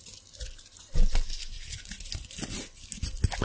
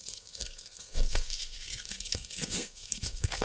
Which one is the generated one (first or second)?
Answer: second